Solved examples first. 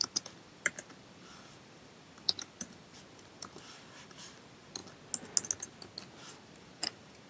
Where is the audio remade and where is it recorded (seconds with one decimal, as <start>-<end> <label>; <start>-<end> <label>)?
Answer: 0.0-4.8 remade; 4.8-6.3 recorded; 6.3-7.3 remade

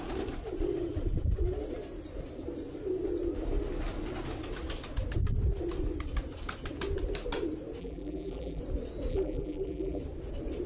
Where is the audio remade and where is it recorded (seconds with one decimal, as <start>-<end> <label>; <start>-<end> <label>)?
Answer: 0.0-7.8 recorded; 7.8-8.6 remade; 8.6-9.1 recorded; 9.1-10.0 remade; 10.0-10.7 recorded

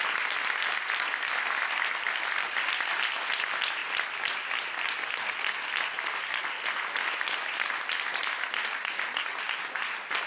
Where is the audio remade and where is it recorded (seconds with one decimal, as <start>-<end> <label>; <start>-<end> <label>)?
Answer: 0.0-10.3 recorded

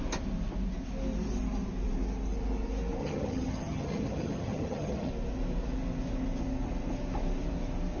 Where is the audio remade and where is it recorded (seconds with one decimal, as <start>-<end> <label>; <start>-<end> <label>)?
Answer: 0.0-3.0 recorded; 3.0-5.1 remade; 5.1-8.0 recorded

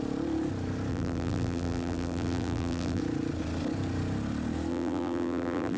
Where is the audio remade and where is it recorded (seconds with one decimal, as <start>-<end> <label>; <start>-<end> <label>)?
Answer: 0.0-0.9 recorded; 0.9-3.0 remade; 3.0-4.7 recorded; 4.7-5.8 remade

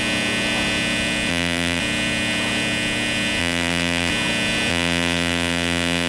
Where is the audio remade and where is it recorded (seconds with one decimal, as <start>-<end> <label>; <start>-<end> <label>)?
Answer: 0.0-1.3 recorded; 1.3-1.8 remade; 1.8-3.4 recorded; 3.4-4.1 remade; 4.1-4.7 recorded; 4.7-6.1 remade